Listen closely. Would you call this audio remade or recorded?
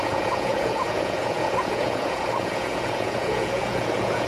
remade